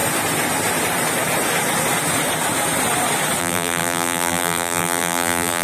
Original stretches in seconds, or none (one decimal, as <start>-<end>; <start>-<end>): 0.0-3.4